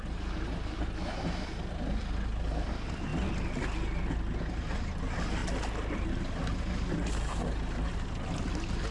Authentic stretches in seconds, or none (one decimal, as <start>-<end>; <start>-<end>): 0.0-8.9